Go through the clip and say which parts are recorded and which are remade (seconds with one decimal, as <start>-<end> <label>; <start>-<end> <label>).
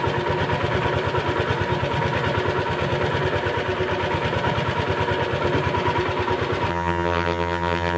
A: 0.0-6.7 recorded; 6.7-8.0 remade